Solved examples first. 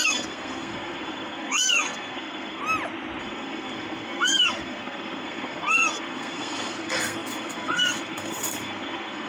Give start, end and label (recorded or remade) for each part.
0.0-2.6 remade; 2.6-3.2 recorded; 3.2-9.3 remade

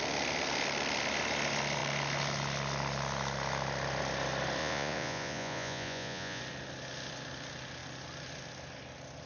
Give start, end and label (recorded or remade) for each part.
0.0-4.6 recorded; 4.6-6.4 remade; 6.4-9.3 recorded

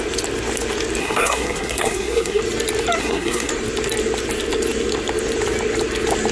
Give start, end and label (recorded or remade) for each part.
0.0-1.0 recorded; 1.0-2.4 remade; 2.4-3.0 recorded; 3.0-3.5 remade; 3.5-6.3 recorded

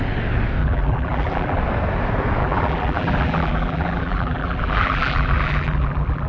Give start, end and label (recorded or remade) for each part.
0.0-0.6 recorded; 0.6-1.6 remade; 1.6-2.4 recorded; 2.4-6.3 remade

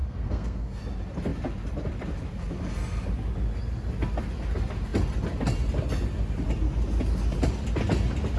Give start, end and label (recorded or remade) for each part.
0.0-0.8 remade; 0.8-8.4 recorded

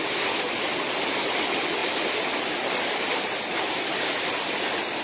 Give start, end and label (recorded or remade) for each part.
0.0-5.0 recorded